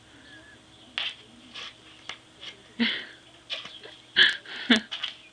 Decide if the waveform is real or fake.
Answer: real